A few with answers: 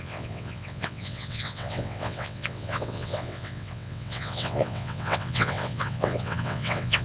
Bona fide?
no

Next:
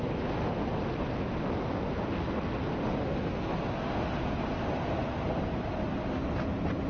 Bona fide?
yes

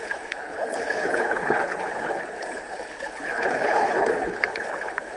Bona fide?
no